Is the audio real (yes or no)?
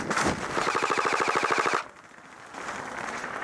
yes